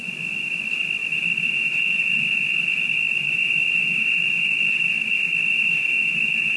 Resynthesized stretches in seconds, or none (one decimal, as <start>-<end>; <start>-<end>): none